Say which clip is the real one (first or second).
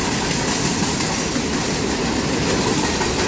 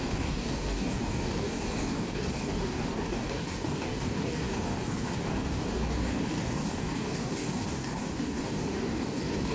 first